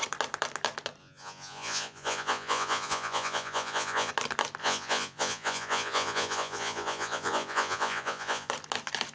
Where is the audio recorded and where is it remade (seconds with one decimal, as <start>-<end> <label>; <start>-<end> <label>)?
0.0-1.0 recorded; 1.0-4.1 remade; 4.1-4.6 recorded; 4.6-8.5 remade; 8.5-9.1 recorded